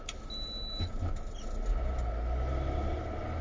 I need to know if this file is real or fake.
real